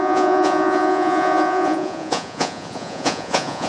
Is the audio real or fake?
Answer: fake